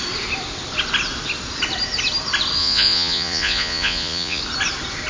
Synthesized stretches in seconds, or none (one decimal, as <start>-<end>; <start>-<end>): 2.6-4.4